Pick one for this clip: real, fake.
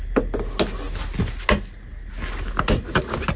real